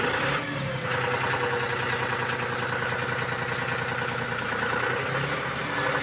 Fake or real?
real